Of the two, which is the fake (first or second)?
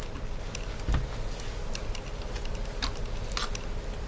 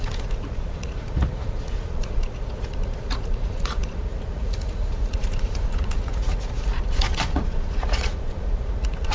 second